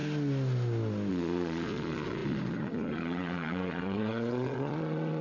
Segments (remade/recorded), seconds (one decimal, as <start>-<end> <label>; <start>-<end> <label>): 0.0-1.1 recorded; 1.1-5.2 remade